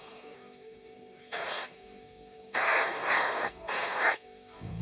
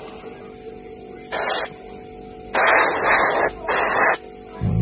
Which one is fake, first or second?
first